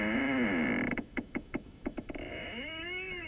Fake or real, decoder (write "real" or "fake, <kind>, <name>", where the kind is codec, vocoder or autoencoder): fake, autoencoder, DAC-VAE